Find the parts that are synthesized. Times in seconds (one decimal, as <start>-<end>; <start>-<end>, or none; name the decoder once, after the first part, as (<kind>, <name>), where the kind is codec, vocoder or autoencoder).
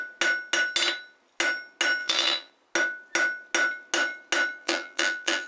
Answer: 2.0-2.5 (vocoder, BigVGAN v2); 4.6-5.5